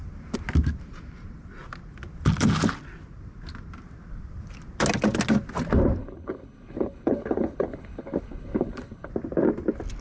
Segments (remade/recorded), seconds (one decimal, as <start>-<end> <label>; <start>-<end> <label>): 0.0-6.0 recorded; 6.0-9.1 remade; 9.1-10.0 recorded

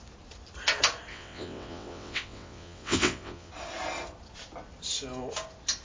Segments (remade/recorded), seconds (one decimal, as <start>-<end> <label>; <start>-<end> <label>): 0.0-1.1 recorded; 1.1-3.5 remade; 3.5-5.8 recorded

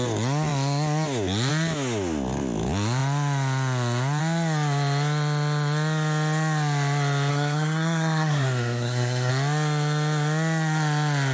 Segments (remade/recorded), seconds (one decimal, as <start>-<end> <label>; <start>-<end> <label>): 0.0-7.3 recorded; 7.3-9.3 remade; 9.3-11.3 recorded